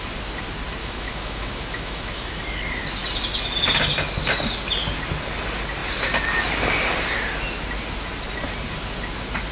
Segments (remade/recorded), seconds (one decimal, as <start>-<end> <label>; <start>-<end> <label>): 0.0-0.8 recorded; 0.8-2.4 remade; 2.4-9.5 recorded